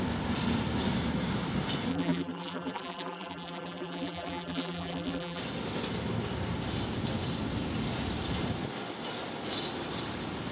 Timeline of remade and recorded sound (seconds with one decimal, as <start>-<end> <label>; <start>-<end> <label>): 0.0-1.9 recorded; 1.9-5.4 remade; 5.4-10.5 recorded